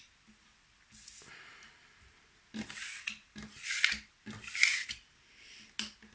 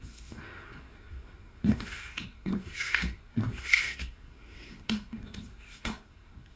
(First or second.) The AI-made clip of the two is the second